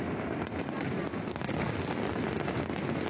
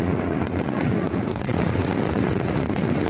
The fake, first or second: second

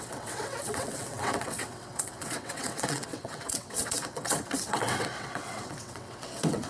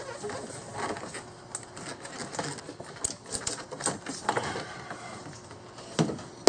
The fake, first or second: first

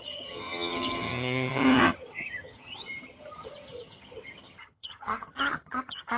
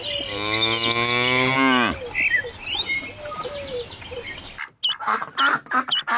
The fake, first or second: first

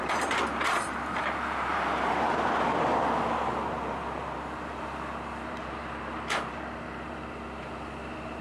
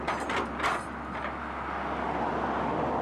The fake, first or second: first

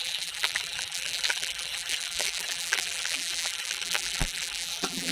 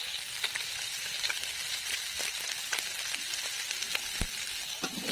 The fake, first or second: first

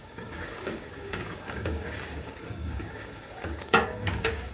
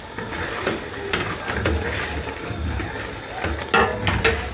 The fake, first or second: first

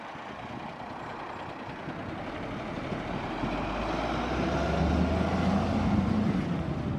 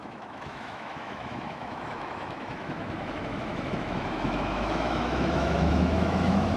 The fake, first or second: second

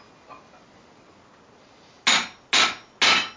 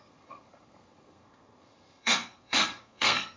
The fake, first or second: second